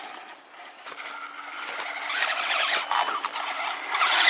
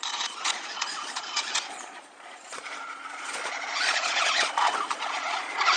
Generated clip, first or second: second